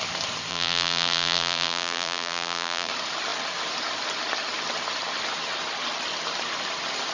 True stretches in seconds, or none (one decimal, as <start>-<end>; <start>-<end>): 0.0-0.5; 2.9-7.1